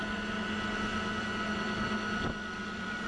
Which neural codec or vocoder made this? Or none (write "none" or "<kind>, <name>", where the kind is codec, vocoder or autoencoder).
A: none